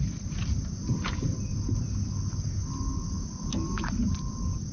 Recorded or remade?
recorded